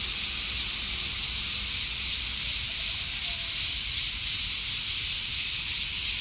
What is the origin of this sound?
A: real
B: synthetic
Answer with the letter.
A